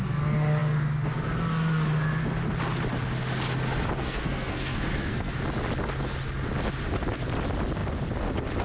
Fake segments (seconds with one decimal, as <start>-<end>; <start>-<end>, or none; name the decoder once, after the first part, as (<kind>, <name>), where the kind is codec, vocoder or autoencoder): 4.0-5.3 (codec, SNAC)